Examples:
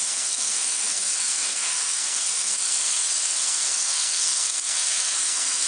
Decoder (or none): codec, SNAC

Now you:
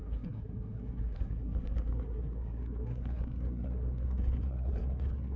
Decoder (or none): codec, SNAC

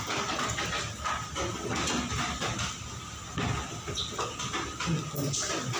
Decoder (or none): none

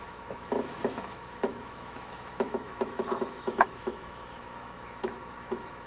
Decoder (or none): autoencoder, DAC-VAE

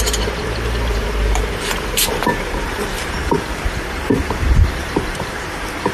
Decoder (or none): vocoder, BigVGAN v2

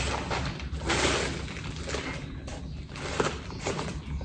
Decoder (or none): none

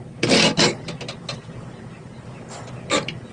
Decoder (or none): none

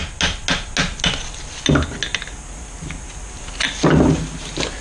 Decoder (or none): none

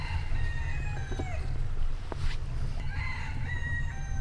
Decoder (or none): none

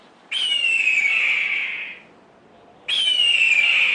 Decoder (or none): none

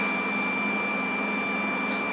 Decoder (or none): none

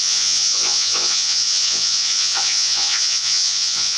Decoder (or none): vocoder, Vocos